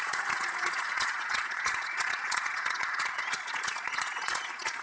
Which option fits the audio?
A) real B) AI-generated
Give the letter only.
B